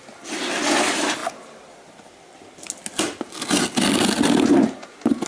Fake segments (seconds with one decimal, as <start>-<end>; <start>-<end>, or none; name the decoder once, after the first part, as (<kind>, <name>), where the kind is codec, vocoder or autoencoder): none